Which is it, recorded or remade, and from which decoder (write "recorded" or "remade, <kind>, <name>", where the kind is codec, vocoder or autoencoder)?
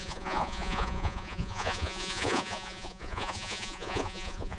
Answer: remade, vocoder, Vocos